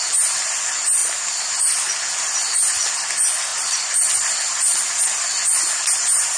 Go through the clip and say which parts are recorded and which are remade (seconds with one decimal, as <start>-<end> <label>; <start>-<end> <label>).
0.0-6.4 recorded